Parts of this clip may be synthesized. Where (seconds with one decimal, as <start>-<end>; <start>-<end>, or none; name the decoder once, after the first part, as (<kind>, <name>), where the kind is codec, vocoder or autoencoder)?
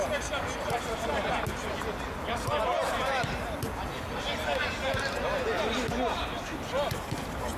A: none